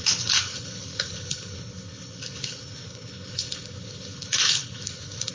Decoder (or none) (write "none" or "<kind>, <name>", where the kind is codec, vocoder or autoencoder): codec, HILCodec